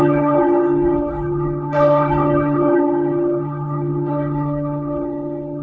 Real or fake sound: fake